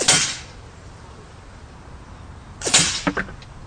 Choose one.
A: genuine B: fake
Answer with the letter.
A